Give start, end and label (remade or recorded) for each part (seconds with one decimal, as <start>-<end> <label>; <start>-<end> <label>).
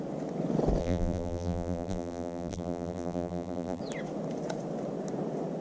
0.0-0.8 recorded; 0.8-3.8 remade; 3.8-5.6 recorded